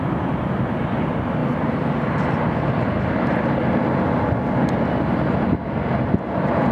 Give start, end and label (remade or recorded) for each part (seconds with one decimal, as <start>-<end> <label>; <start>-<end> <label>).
0.0-6.7 recorded